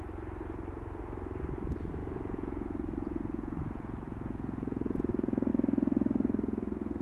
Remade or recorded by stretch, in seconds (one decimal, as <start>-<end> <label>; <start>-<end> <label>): 0.0-2.0 recorded; 2.0-5.1 remade; 5.1-7.0 recorded